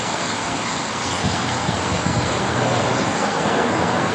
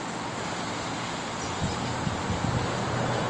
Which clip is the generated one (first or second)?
first